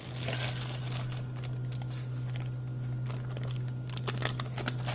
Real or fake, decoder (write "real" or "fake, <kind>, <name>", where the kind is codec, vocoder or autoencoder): real